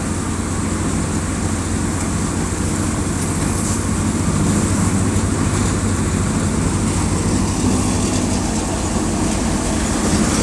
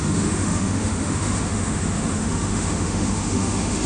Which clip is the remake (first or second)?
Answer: second